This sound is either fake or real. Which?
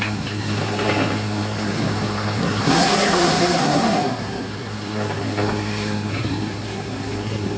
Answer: fake